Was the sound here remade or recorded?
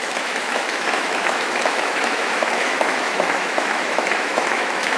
remade